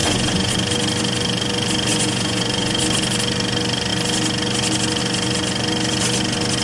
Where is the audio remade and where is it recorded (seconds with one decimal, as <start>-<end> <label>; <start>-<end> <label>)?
0.0-0.5 remade; 0.5-1.9 recorded; 1.9-2.8 remade; 2.8-6.6 recorded